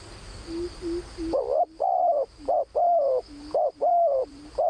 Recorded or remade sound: remade